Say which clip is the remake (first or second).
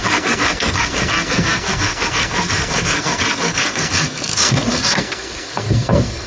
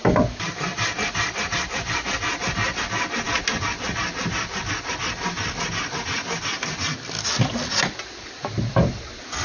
first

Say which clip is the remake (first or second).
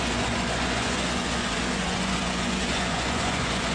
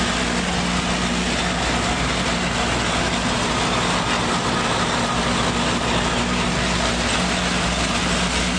first